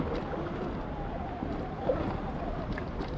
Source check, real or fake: real